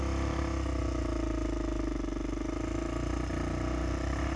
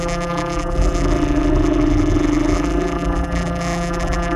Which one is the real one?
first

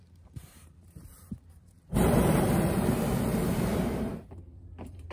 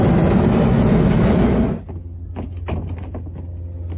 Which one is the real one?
second